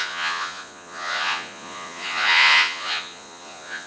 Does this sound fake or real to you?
fake